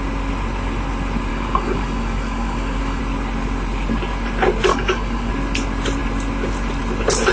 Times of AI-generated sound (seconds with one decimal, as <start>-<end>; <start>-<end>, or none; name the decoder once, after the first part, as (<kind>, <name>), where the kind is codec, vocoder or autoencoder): 1.3-3.0 (codec, DAC); 4.7-5.3